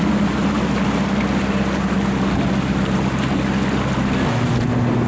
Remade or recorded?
recorded